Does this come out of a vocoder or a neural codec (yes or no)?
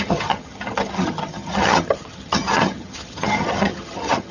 yes